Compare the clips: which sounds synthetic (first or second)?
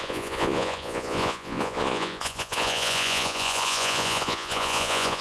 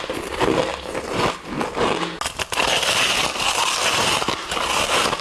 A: first